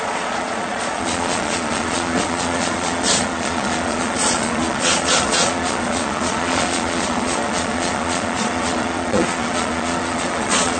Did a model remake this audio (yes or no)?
yes